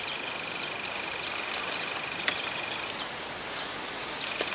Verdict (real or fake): real